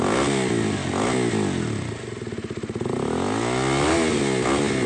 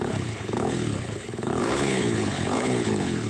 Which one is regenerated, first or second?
second